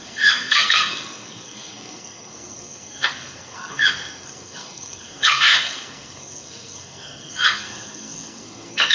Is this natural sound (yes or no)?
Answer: no